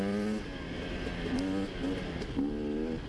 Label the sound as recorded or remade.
recorded